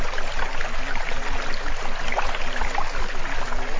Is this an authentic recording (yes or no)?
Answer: yes